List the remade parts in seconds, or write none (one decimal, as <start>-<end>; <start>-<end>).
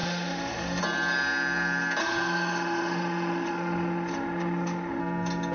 0.0-0.8; 2.0-5.0